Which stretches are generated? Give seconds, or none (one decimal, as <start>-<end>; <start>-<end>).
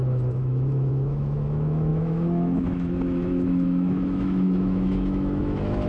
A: 0.0-5.9